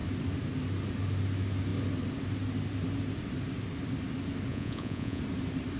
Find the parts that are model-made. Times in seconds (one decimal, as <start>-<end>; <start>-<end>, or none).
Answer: 4.5-5.2